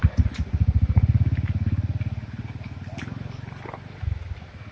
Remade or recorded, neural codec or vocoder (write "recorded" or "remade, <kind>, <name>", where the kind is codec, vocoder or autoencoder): recorded